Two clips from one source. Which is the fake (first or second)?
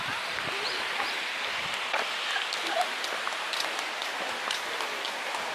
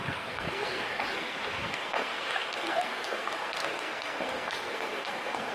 second